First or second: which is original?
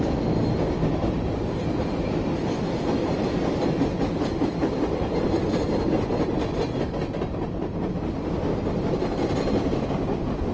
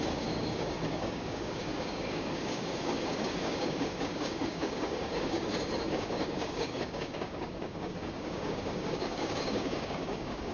first